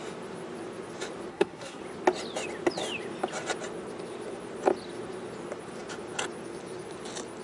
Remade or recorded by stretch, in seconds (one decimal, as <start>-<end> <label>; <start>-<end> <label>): 0.0-1.3 recorded; 1.3-1.8 remade; 1.8-7.4 recorded